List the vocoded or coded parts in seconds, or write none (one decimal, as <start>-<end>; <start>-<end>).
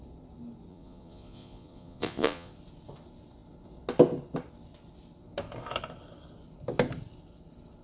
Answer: 0.7-2.5